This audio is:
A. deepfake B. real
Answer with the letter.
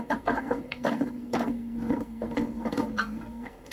A